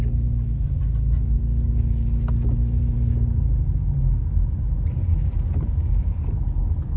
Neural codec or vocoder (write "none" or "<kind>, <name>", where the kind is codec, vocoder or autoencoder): none